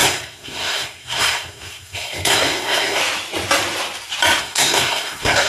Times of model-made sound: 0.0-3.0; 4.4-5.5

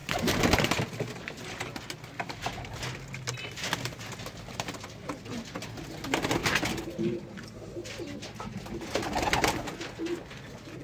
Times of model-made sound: none

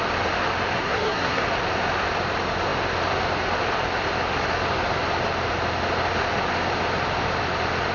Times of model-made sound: 0.8-1.4

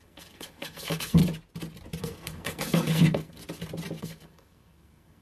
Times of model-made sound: 0.0-1.2; 2.0-3.4; 4.0-5.2